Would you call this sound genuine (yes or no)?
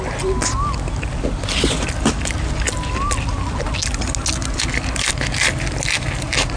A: yes